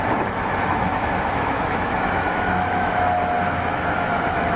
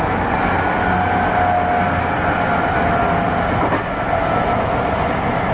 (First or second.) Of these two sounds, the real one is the second